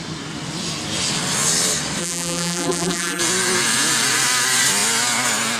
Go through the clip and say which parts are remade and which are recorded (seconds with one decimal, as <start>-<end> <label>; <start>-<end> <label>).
0.0-2.0 recorded; 2.0-3.2 remade; 3.2-5.6 recorded